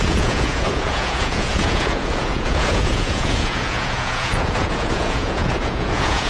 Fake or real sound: fake